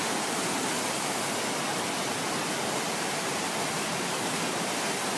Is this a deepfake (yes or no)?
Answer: no